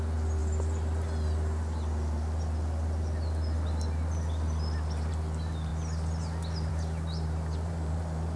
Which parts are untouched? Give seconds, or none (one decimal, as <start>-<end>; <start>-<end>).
0.0-8.4